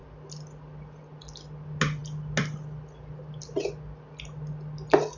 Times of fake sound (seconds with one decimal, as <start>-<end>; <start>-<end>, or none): none